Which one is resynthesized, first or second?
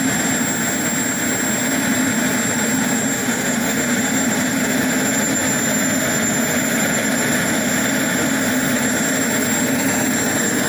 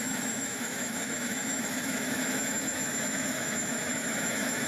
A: second